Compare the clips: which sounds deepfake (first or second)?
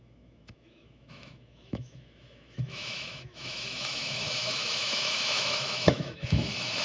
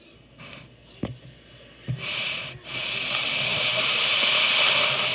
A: first